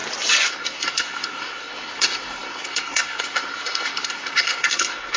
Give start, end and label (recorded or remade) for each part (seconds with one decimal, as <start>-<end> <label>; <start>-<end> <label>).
0.0-0.5 recorded; 0.5-5.2 remade